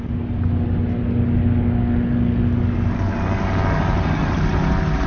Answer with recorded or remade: recorded